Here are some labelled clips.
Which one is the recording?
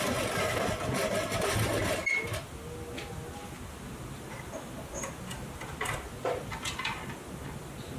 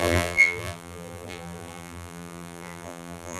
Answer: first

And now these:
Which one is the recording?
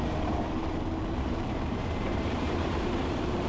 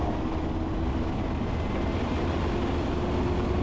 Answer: second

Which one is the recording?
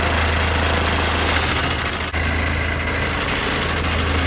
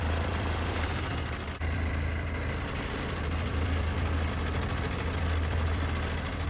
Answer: first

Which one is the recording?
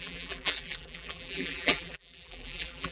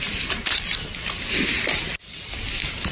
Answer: second